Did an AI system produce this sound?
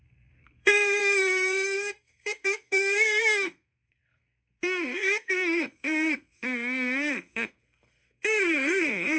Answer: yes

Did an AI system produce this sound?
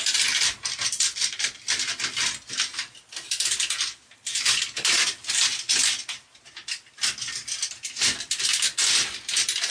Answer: no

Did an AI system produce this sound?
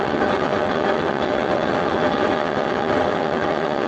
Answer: yes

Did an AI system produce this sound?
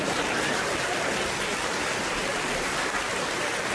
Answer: no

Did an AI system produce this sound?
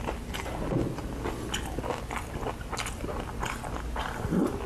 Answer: no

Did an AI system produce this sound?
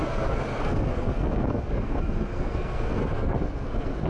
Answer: yes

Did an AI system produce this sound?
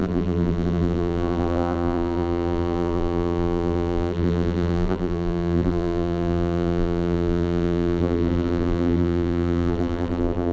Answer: yes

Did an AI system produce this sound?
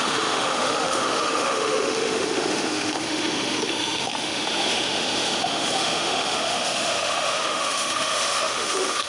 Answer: yes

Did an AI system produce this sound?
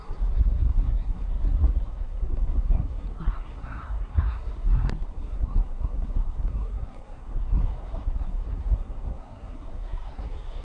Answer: yes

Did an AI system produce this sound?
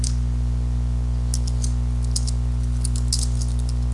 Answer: no